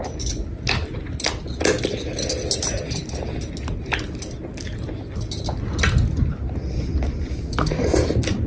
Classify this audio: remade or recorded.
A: recorded